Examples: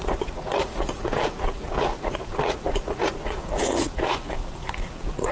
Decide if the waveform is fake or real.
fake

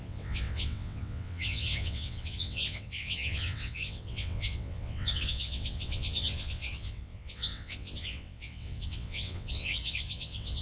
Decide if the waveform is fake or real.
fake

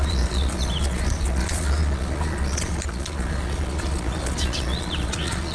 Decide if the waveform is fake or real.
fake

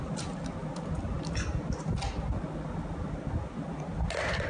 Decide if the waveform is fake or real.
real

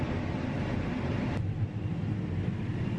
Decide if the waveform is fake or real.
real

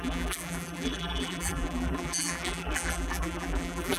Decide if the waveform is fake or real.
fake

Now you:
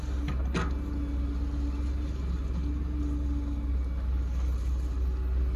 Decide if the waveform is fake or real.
real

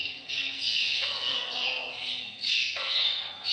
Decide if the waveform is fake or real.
fake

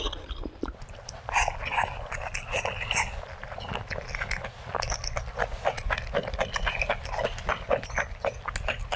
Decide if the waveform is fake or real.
real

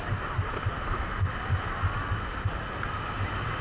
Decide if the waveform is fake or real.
real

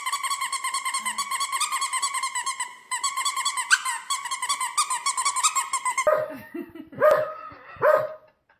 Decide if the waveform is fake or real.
real